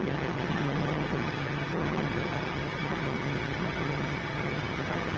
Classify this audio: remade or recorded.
remade